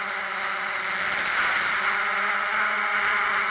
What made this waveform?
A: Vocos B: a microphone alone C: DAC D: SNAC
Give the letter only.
B